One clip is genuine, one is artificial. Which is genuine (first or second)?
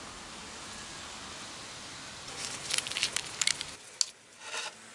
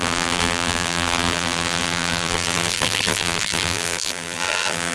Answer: first